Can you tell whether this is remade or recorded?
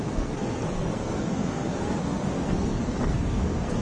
remade